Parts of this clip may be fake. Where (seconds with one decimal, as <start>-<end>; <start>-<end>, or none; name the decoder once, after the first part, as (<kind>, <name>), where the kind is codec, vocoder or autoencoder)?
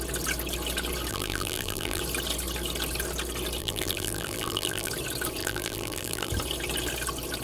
1.1-2.0 (vocoder, BigVGAN v2); 3.6-4.9; 5.4-6.3